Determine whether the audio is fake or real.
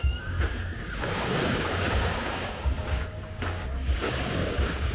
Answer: fake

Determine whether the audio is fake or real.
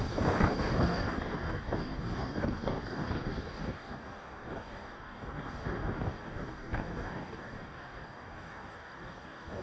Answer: fake